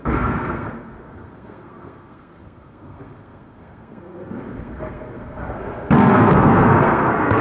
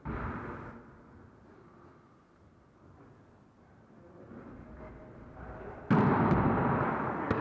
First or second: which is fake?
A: first